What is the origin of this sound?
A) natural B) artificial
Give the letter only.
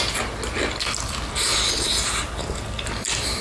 A